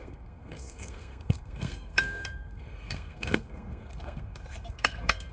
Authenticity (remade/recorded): remade